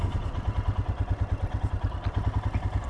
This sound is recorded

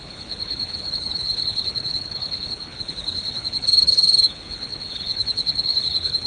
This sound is remade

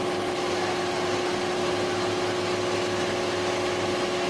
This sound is recorded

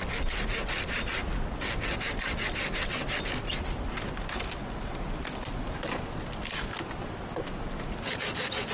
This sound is recorded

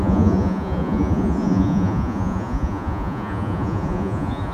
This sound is remade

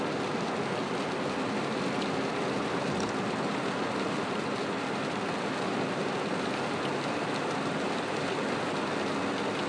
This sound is recorded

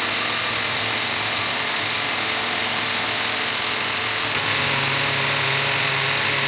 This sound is recorded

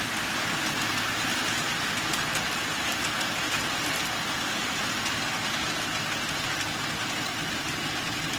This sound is recorded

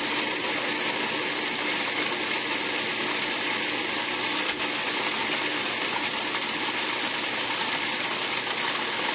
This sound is recorded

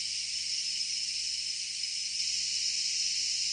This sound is remade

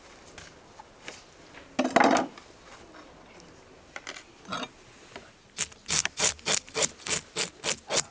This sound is recorded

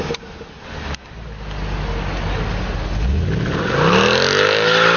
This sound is recorded